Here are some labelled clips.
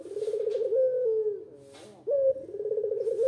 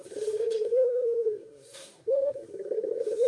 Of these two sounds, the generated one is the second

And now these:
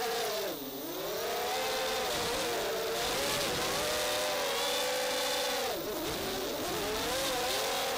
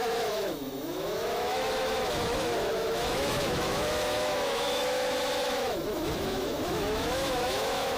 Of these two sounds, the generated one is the second